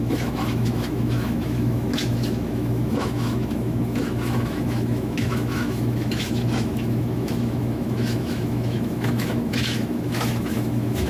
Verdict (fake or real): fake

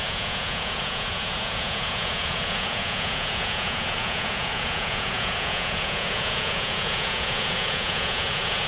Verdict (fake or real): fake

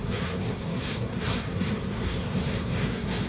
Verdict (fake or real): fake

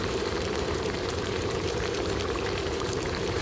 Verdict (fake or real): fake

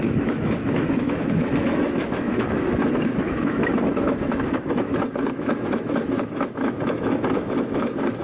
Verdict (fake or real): fake